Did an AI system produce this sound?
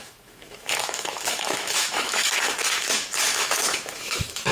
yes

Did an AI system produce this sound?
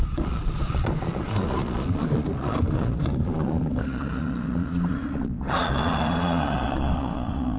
yes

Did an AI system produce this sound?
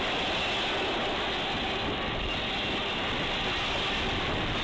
no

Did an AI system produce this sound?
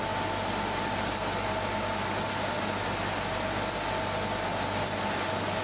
no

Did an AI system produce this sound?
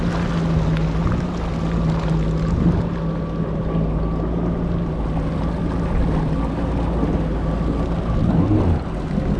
no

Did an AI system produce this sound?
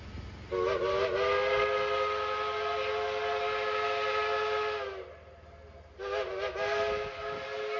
no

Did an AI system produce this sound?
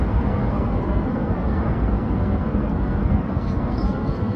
yes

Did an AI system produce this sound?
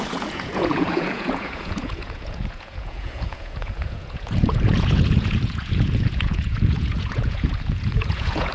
yes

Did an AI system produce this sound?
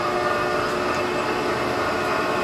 no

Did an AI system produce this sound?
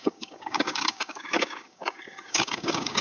yes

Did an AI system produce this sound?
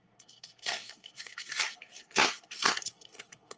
yes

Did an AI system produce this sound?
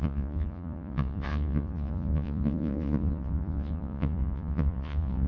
yes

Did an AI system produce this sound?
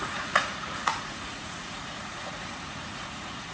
yes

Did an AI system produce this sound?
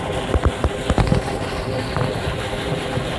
no